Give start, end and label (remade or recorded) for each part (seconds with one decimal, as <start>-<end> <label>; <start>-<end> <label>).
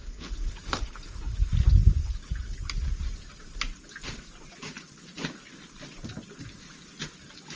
0.0-1.4 remade; 1.4-2.0 recorded; 2.0-2.6 remade; 2.6-7.6 recorded